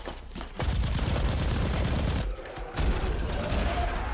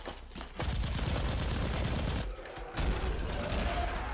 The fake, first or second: first